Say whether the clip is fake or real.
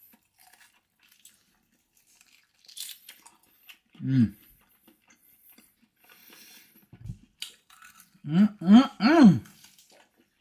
real